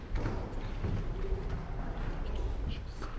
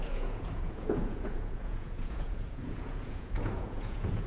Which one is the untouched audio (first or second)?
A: first